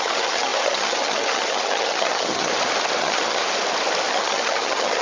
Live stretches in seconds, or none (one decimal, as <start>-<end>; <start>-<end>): 2.5-3.0; 3.4-4.1